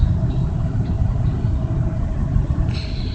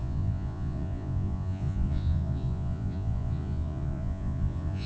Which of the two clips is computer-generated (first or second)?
second